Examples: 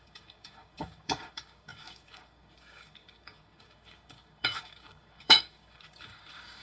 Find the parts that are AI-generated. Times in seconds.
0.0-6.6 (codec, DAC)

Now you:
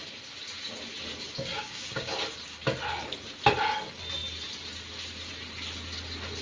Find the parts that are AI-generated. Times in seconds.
1.5-2.1 (codec, DAC)

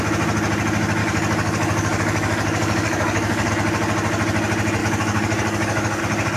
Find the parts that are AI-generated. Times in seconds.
1.0-3.5 (codec, DAC); 4.8-6.0